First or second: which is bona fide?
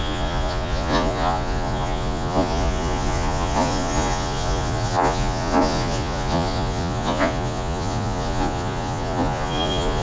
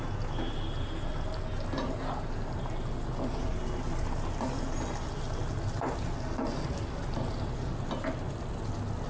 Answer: second